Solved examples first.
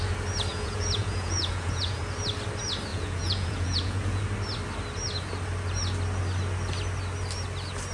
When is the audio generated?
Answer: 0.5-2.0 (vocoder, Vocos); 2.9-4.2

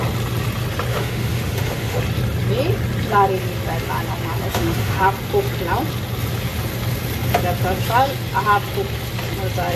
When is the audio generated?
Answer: 0.9-2.0 (autoencoder, DAC-VAE); 4.5-5.0

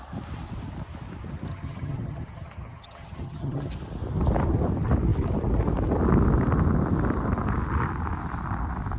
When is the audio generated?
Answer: 1.5-3.7 (vocoder, HiFi-GAN)